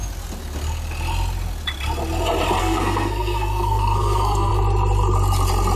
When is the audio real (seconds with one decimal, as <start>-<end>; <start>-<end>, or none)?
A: 0.0-2.6; 4.5-5.8